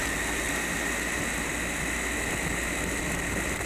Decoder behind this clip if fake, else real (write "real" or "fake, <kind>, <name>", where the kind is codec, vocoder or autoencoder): real